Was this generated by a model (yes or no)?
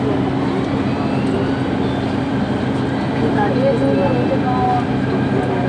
no